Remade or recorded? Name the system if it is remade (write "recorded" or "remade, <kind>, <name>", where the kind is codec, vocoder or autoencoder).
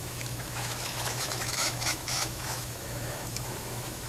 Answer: remade, autoencoder, DAC-VAE